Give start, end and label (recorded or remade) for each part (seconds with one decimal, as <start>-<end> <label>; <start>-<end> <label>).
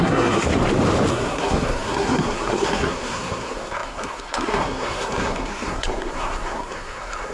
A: 0.0-0.5 remade; 0.5-1.1 recorded; 1.1-7.3 remade